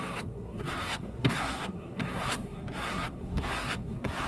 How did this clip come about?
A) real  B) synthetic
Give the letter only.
B